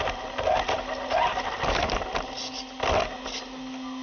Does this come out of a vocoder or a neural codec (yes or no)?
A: no